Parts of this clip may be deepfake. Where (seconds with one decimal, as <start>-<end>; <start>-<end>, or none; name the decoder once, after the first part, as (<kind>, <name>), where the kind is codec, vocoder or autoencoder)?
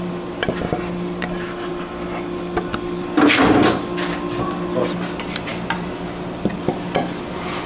none